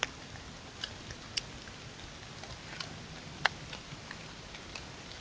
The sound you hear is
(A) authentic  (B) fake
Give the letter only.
A